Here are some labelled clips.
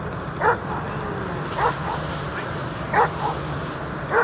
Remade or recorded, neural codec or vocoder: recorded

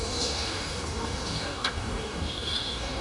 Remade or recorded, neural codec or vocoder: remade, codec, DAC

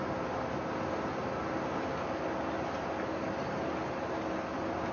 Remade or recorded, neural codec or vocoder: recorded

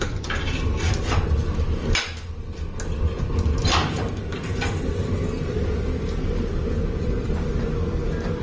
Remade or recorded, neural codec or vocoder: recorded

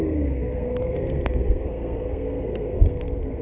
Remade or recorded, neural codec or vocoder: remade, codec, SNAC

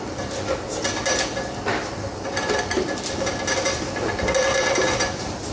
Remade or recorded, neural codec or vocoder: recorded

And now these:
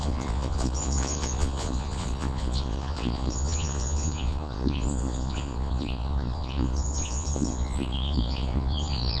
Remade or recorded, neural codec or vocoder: remade, vocoder, Vocos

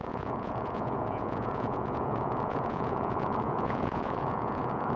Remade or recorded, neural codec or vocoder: remade, vocoder, Vocos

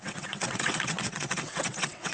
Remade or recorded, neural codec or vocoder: remade, vocoder, WaveNeXt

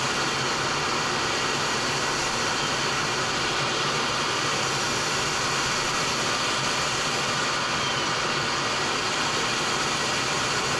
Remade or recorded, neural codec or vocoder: recorded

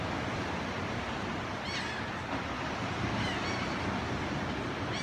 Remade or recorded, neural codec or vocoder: recorded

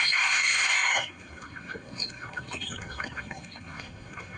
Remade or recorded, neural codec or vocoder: remade, codec, SNAC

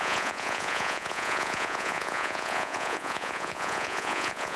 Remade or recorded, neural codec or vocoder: remade, vocoder, Vocos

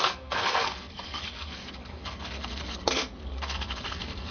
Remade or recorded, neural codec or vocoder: remade, codec, SNAC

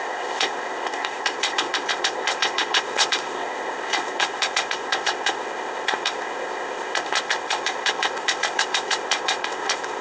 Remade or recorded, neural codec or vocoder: remade, codec, ZipCodec